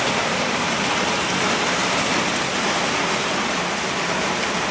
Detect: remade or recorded recorded